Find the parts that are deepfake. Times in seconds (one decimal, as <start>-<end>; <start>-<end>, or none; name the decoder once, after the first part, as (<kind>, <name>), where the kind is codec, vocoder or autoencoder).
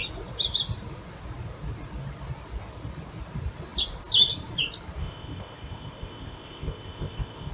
5.0-7.5 (codec, ZipCodec)